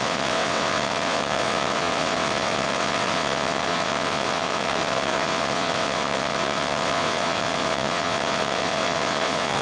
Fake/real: fake